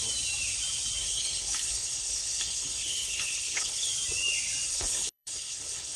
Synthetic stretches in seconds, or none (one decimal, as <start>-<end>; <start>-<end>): 1.0-3.9; 4.7-6.0